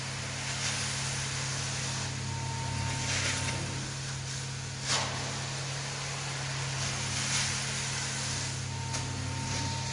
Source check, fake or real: real